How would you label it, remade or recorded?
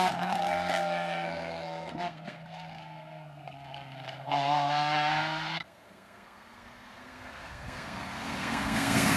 remade